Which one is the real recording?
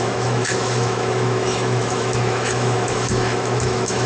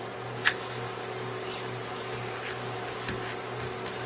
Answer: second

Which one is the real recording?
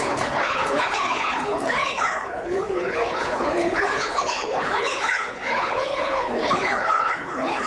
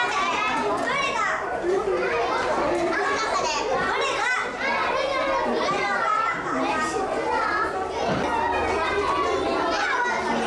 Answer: second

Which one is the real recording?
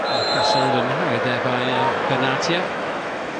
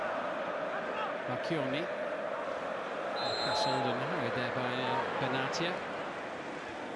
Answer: second